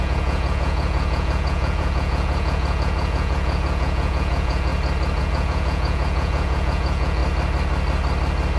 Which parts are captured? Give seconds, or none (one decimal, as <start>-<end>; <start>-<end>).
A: 4.7-5.2; 7.2-8.6